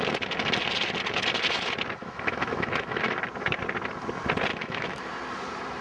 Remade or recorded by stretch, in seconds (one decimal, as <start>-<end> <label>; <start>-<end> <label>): 0.0-2.0 recorded; 2.0-3.1 remade; 3.1-4.5 recorded; 4.5-5.0 remade; 5.0-5.8 recorded